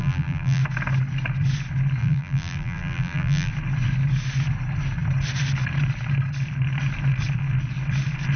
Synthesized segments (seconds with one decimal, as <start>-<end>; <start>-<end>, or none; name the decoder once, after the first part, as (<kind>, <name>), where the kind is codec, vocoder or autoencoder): 0.0-0.6 (vocoder, BigVGAN v2); 2.0-3.5

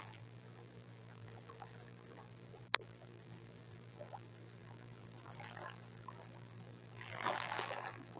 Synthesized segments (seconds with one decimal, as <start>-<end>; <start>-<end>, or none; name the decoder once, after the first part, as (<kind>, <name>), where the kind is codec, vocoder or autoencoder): 0.0-8.2 (vocoder, BigVGAN v2)

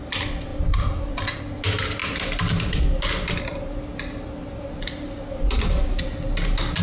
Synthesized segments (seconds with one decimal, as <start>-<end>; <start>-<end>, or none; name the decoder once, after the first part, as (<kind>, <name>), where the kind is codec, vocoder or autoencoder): 0.5-1.4 (vocoder, BigVGAN v2); 2.0-2.8; 3.9-4.9

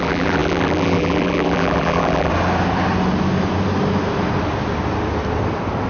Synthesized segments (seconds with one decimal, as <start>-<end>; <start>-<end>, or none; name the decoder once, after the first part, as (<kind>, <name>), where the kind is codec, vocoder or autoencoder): 0.0-2.3 (vocoder, BigVGAN v2)

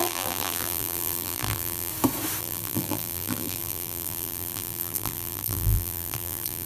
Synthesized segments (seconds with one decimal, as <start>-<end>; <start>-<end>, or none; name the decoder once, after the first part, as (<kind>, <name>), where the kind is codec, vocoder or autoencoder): 0.0-1.9 (vocoder, BigVGAN v2); 2.4-6.7

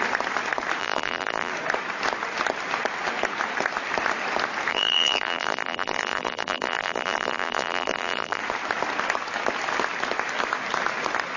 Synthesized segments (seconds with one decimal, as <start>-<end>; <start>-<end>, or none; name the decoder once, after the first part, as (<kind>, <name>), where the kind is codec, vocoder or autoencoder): 0.8-1.5 (vocoder, BigVGAN v2); 4.7-8.4